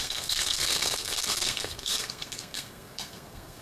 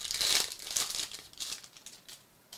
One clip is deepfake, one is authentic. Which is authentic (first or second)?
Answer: second